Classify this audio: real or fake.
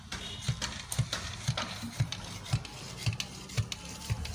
real